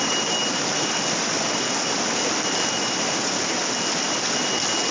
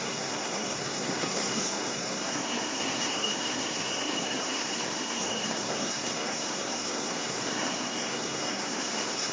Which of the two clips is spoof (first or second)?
second